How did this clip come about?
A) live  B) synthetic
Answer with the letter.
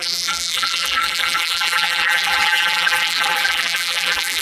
B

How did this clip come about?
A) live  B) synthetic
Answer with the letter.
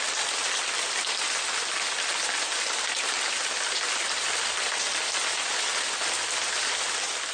A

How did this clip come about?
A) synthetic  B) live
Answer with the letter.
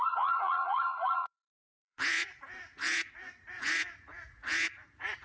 A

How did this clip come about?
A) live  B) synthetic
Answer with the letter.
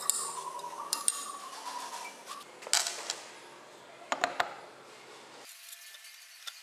A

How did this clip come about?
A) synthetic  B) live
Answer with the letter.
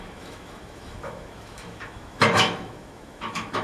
A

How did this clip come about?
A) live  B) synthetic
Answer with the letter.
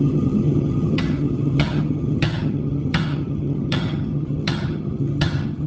B